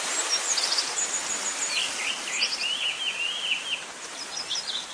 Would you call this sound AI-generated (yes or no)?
no